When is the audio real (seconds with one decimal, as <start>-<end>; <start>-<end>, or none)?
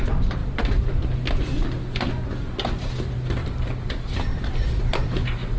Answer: 0.0-3.4; 3.9-4.3